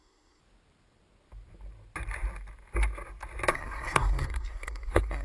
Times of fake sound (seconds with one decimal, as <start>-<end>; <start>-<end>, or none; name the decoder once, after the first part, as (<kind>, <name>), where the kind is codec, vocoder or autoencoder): 0.0-0.4 (codec, SNAC); 3.5-5.2